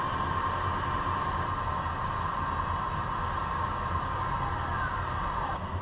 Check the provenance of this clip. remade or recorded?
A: recorded